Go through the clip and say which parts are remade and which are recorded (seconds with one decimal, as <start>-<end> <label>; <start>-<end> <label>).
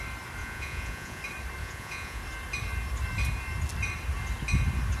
0.0-0.4 recorded; 0.4-1.2 remade; 1.2-1.6 recorded; 1.6-2.2 remade; 2.2-5.0 recorded